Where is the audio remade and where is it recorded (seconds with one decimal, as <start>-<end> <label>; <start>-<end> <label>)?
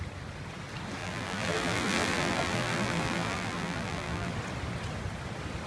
0.0-1.0 recorded; 1.0-4.3 remade; 4.3-5.7 recorded